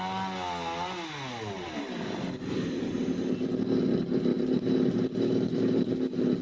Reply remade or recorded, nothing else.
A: recorded